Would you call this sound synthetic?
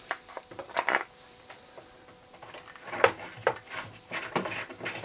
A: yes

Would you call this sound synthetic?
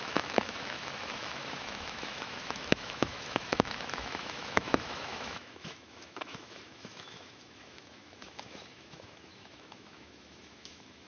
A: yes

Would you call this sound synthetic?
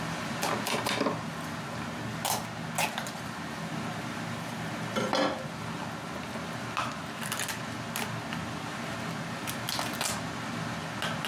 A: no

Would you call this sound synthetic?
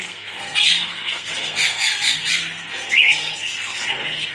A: yes